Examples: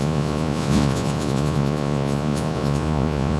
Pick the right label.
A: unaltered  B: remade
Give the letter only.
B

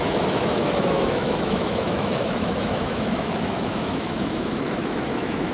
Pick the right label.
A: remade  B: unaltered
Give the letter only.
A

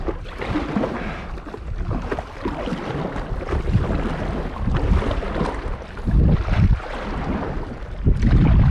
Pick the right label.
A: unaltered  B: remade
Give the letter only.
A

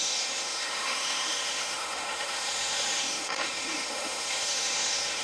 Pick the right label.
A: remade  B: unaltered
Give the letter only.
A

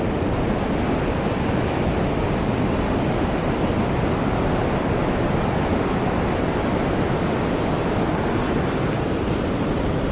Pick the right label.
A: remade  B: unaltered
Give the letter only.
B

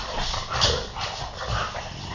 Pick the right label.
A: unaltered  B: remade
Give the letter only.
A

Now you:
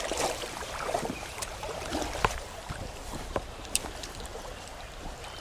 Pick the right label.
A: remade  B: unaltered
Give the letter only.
A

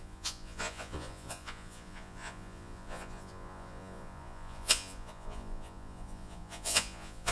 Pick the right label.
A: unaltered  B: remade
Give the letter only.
B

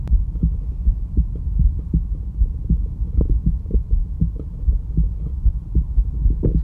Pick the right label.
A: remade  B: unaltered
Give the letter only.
B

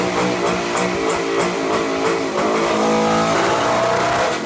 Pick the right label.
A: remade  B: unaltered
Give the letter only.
B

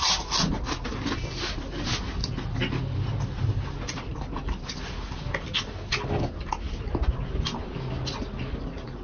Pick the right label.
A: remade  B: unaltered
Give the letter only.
B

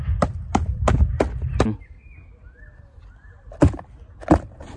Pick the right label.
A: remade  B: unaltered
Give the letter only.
B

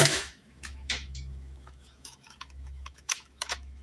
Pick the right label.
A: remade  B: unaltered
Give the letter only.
A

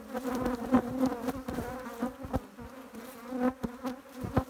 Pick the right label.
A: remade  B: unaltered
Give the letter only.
B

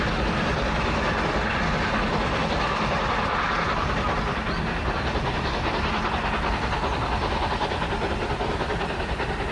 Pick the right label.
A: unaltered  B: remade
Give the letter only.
A